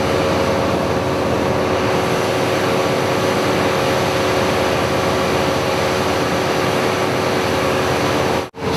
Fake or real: real